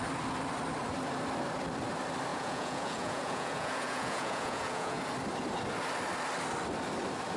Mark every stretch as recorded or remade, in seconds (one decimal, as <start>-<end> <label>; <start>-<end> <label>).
0.0-2.3 recorded; 2.3-5.0 remade; 5.0-7.4 recorded